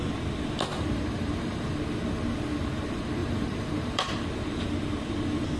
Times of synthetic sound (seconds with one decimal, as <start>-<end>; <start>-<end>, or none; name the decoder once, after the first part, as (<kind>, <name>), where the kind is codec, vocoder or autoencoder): 0.7-1.7 (vocoder, BigVGAN v2); 3.2-4.6